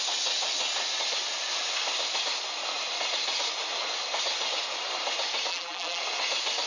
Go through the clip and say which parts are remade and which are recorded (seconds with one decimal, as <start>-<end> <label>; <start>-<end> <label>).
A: 0.0-5.5 recorded; 5.5-6.0 remade; 6.0-6.7 recorded